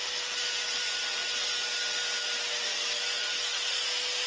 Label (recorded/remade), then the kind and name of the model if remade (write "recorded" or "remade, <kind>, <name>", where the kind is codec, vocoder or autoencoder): recorded